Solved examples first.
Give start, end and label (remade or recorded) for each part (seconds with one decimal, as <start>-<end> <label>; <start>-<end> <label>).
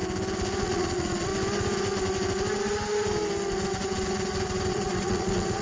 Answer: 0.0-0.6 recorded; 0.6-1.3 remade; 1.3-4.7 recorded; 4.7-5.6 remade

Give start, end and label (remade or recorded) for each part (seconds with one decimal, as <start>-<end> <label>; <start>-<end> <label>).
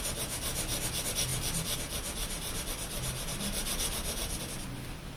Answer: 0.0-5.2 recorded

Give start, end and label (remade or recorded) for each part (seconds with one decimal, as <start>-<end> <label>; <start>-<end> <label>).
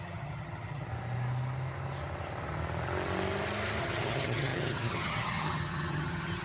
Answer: 0.0-0.9 remade; 0.9-3.8 recorded; 3.8-6.4 remade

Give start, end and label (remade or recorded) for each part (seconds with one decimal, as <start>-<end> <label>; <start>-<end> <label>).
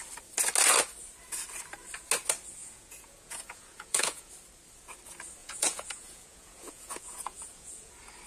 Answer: 0.0-2.6 recorded; 2.6-4.3 remade; 4.3-5.4 recorded; 5.4-7.9 remade; 7.9-8.3 recorded